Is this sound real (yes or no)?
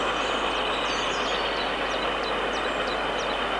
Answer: yes